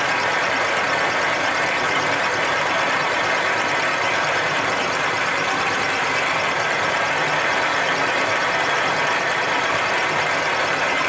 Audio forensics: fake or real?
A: fake